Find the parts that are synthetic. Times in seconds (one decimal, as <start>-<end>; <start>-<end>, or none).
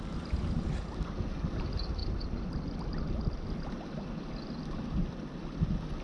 none